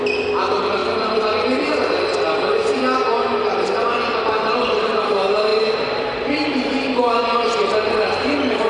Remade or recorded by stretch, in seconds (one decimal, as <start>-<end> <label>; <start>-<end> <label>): 0.0-0.8 recorded; 0.8-2.8 remade; 2.8-5.5 recorded; 5.5-6.5 remade; 6.5-8.7 recorded